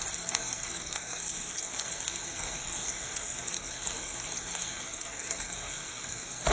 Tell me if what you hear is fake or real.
fake